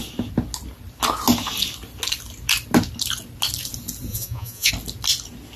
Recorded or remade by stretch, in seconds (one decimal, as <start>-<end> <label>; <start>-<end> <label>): 0.0-4.1 recorded; 4.1-4.7 remade; 4.7-5.6 recorded